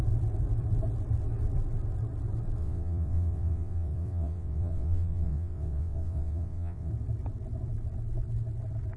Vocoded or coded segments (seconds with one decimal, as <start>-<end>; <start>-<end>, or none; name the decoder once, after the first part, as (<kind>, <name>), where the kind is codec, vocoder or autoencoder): 2.6-6.9 (vocoder, WaveNeXt)